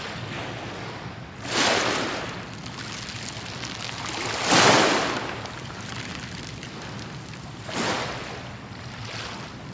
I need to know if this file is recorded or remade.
recorded